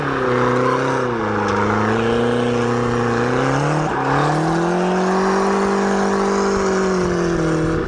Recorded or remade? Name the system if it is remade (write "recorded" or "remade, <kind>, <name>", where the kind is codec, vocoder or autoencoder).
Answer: recorded